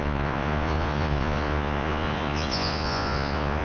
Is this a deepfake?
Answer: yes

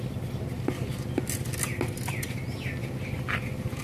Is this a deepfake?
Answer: no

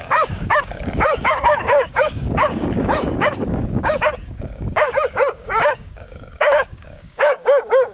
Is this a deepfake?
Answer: yes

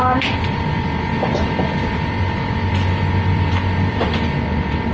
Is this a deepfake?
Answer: yes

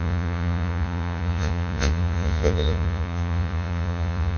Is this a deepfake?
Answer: yes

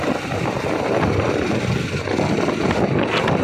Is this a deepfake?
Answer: no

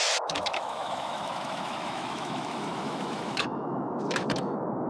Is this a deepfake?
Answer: yes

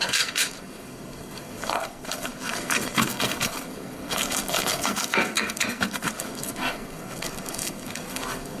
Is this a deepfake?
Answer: yes